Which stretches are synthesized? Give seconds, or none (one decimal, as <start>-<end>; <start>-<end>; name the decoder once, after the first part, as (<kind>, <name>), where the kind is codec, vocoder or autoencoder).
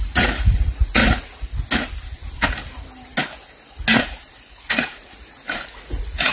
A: 0.0-1.0 (vocoder, Vocos); 4.5-6.3